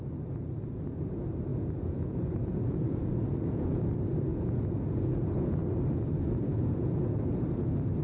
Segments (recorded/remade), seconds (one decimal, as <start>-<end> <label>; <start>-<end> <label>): 0.0-1.5 recorded; 1.5-3.8 remade; 3.8-4.3 recorded; 4.3-5.6 remade; 5.6-6.2 recorded; 6.2-7.0 remade; 7.0-8.0 recorded